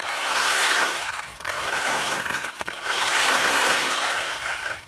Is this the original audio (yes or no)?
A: no